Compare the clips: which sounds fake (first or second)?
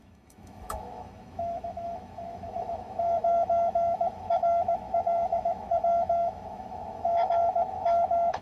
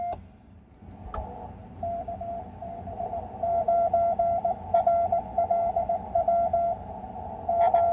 first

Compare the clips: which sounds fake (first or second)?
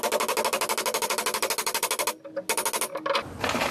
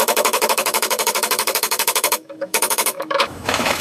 second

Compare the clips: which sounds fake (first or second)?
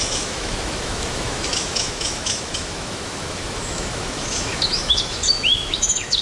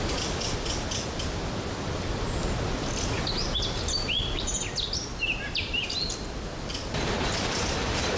first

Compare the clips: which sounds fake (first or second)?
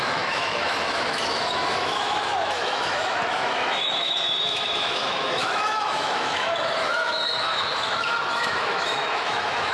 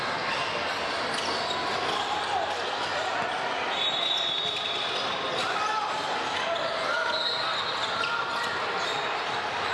first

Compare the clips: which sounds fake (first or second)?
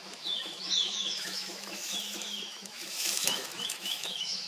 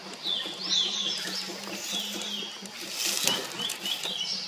first